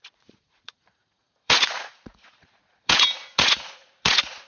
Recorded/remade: remade